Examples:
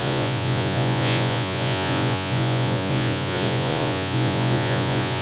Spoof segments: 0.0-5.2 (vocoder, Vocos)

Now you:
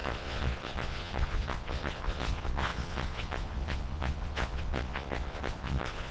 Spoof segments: 0.0-6.1 (vocoder, Vocos)

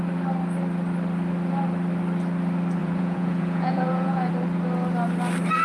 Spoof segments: 2.8-4.3 (vocoder, Vocos)

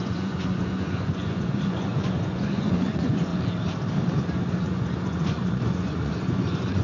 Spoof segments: 0.0-3.3 (vocoder, Vocos); 4.6-6.8